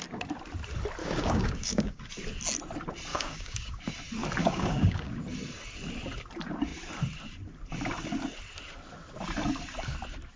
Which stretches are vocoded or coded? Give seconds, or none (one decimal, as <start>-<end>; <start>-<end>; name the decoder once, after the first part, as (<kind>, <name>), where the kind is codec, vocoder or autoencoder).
1.0-2.0 (codec, DAC); 3.1-3.8; 4.4-5.1